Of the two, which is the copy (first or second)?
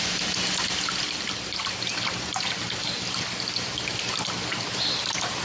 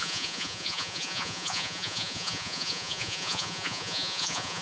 second